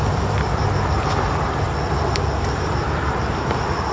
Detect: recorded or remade recorded